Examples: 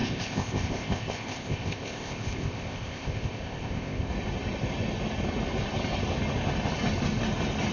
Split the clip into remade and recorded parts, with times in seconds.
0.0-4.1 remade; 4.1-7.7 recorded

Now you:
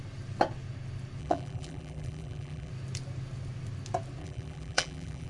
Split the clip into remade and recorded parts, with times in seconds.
0.0-1.2 recorded; 1.2-2.7 remade; 2.7-4.2 recorded; 4.2-5.3 remade

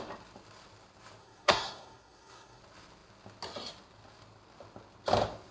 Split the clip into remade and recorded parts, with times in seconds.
0.0-1.2 recorded; 1.2-2.6 remade; 2.6-5.5 recorded